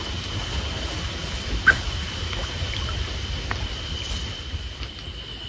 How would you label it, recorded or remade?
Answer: recorded